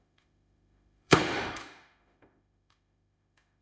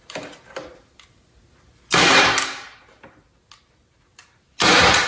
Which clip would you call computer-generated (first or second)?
first